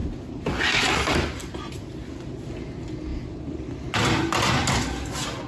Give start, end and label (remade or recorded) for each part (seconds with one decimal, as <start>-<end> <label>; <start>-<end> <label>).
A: 0.0-5.5 recorded

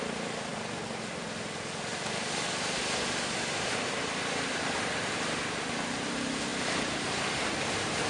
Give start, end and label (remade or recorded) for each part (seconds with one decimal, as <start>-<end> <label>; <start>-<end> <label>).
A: 0.0-0.5 remade; 0.5-3.6 recorded; 3.6-8.1 remade

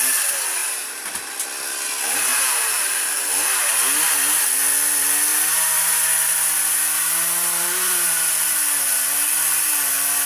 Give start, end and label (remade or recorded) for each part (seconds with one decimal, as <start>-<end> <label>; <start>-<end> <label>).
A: 0.0-0.6 recorded; 0.6-1.2 remade; 1.2-2.3 recorded; 2.3-3.2 remade; 3.2-5.3 recorded; 5.3-8.4 remade; 8.4-10.3 recorded

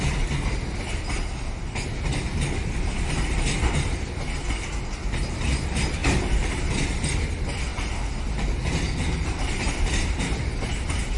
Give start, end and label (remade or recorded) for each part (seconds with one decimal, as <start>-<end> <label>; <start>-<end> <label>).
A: 0.0-6.0 recorded; 6.0-7.0 remade; 7.0-11.2 recorded

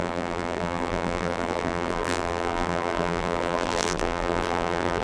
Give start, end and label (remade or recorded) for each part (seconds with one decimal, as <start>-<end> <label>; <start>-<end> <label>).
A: 0.0-5.0 remade

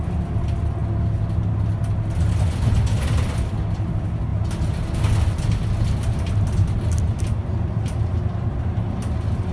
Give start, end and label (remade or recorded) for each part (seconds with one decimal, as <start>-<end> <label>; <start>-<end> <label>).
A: 0.0-9.5 recorded